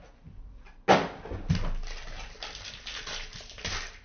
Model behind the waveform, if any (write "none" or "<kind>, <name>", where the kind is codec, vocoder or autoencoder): none